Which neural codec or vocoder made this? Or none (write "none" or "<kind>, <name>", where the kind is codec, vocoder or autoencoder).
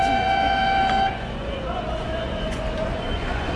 vocoder, Vocos